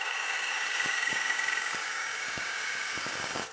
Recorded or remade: remade